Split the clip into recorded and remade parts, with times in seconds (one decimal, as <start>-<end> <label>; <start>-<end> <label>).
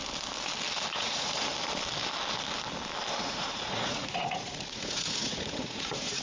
0.0-0.9 recorded; 0.9-1.5 remade; 1.5-3.2 recorded; 3.2-6.2 remade